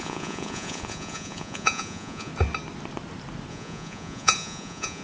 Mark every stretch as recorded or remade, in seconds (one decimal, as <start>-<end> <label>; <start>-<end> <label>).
0.0-2.3 remade; 2.3-3.5 recorded; 3.5-5.0 remade